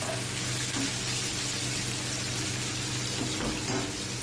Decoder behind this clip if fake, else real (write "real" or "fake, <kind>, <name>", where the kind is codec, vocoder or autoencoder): real